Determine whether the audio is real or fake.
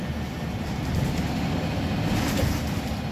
real